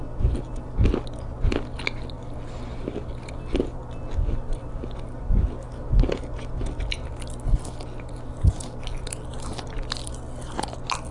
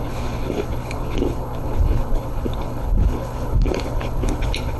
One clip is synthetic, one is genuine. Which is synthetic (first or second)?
second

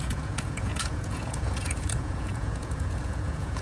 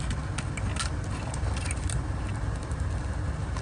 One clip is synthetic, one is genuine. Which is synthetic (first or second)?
first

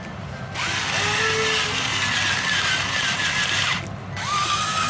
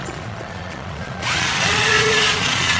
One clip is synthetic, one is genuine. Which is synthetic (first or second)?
second